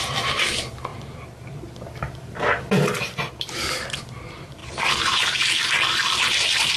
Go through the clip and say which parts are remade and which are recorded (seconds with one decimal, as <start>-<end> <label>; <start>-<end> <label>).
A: 0.0-6.8 remade